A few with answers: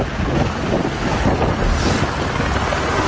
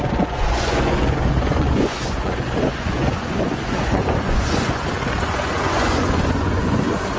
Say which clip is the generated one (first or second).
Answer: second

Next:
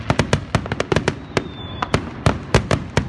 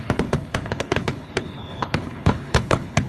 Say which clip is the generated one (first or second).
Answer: second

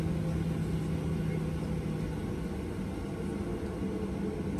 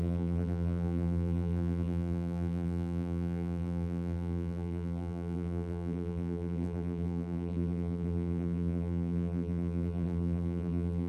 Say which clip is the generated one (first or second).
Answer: second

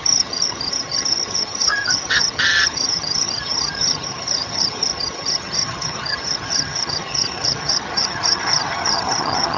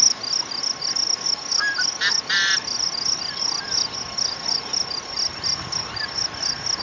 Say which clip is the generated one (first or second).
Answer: first